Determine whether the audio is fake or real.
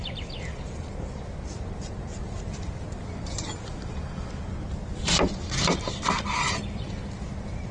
real